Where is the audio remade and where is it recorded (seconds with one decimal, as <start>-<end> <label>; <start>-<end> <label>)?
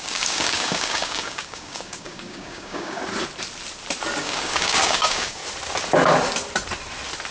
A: 0.0-3.0 remade; 3.0-4.2 recorded; 4.2-5.4 remade; 5.4-7.3 recorded